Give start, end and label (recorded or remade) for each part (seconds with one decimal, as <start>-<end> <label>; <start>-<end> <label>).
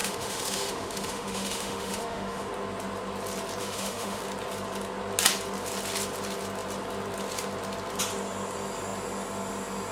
0.0-2.5 remade; 2.5-3.6 recorded; 3.6-4.2 remade; 4.2-9.9 recorded